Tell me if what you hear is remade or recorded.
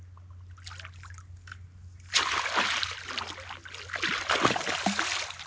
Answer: recorded